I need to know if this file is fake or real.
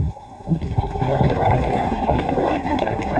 fake